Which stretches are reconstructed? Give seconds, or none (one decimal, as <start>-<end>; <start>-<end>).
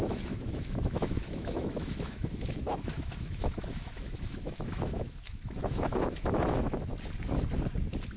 0.0-6.9